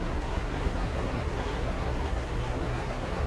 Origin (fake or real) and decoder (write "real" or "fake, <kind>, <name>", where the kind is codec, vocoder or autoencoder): fake, codec, SNAC